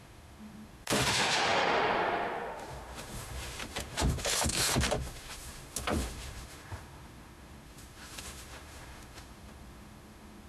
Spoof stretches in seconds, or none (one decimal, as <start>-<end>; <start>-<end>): 0.0-10.5